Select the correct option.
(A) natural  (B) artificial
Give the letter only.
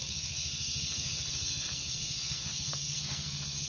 B